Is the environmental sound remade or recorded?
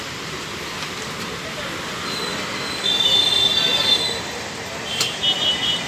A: recorded